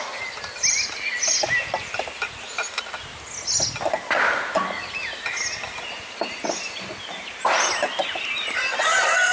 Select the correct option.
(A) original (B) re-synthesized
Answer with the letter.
A